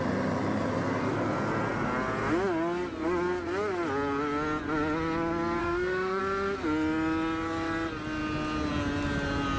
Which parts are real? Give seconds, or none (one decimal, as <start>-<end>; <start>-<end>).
0.0-5.6; 6.2-9.6